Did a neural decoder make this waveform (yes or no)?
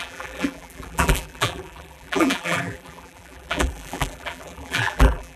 yes